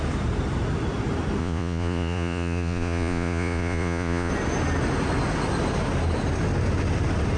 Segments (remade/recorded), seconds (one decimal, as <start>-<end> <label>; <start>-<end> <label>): 0.0-1.4 recorded; 1.4-4.3 remade; 4.3-7.4 recorded